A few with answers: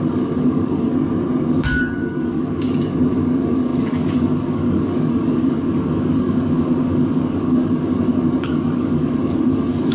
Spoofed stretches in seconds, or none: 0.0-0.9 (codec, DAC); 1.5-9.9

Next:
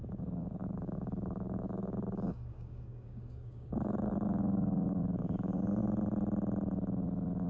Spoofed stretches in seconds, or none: 0.0-5.8 (codec, DAC)

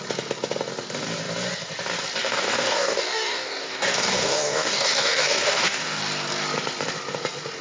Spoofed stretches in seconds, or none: 2.2-6.0 (codec, DAC)

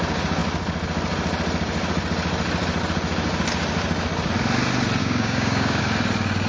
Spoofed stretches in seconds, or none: 5.0-5.8 (codec, DAC)

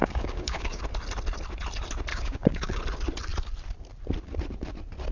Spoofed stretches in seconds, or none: 0.0-0.8 (codec, DAC); 2.1-2.8

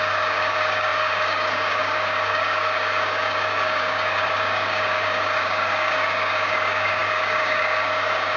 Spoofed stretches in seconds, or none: 0.0-8.4 (codec, DAC)

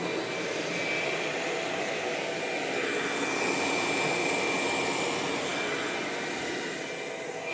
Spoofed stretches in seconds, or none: 1.7-2.4 (codec, DAC)